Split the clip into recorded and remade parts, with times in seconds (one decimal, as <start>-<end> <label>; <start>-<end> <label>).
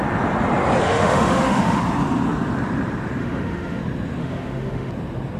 0.0-0.8 recorded; 0.8-1.8 remade; 1.8-3.2 recorded; 3.2-3.8 remade; 3.8-4.2 recorded; 4.2-4.9 remade; 4.9-5.4 recorded